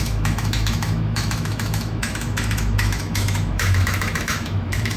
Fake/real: fake